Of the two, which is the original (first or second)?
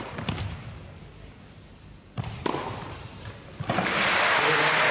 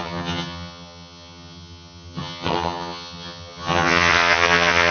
first